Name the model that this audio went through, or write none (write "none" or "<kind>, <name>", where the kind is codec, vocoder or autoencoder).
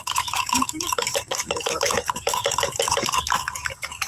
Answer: codec, DAC